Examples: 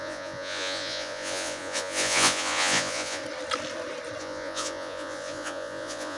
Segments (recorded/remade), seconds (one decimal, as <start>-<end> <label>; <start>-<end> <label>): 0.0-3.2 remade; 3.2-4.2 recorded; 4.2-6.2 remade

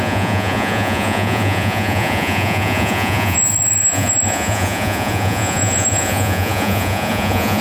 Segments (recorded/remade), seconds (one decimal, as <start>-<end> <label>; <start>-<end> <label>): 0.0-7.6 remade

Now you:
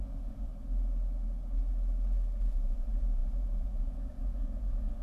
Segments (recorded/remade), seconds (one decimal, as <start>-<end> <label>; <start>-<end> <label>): 0.0-0.5 remade; 0.5-2.5 recorded; 2.5-5.0 remade